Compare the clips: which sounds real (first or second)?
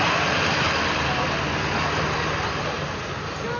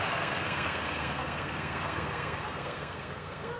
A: first